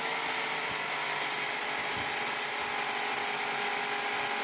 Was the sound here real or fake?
real